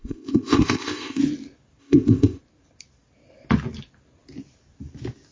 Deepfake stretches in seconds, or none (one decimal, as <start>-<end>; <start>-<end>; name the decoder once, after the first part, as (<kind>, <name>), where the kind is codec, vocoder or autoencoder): 0.0-1.2 (codec, ZipCodec); 1.8-2.4